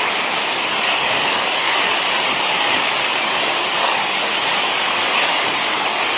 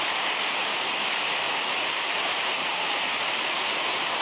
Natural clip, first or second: second